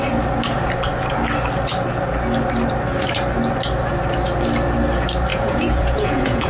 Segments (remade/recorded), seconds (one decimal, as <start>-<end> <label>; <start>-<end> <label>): 0.0-5.3 recorded; 5.3-6.5 remade